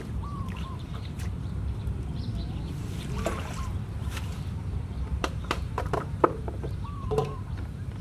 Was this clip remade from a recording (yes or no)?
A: yes